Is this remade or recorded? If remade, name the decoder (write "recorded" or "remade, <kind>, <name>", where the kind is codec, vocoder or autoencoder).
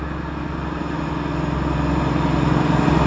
recorded